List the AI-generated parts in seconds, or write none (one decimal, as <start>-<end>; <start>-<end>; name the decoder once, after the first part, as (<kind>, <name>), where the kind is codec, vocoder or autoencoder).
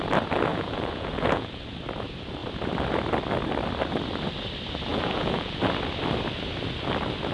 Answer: 0.5-1.6 (vocoder, Vocos); 4.9-5.6